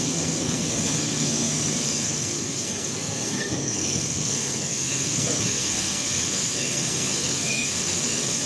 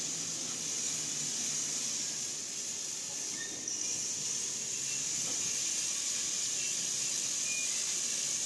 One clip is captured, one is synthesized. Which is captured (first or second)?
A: second